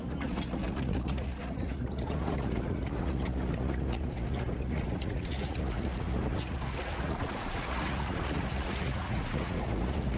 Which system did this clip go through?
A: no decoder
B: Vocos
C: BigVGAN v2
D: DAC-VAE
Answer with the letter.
B